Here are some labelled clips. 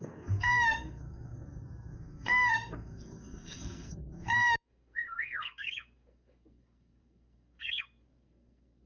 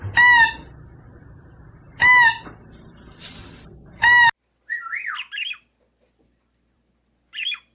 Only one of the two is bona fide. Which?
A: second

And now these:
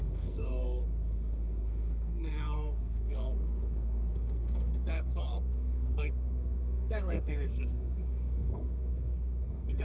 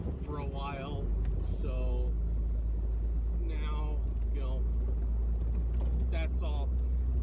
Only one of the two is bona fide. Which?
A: second